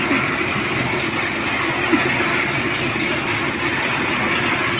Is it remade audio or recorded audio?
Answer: recorded